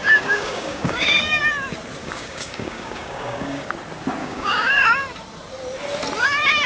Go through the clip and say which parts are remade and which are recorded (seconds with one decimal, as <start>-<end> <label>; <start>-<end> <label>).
0.0-1.4 remade; 1.4-2.0 recorded; 2.0-3.7 remade; 3.7-4.2 recorded; 4.2-4.8 remade; 4.8-6.7 recorded